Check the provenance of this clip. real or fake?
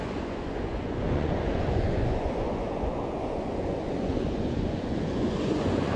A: fake